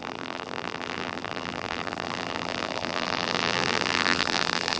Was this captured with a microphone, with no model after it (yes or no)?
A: no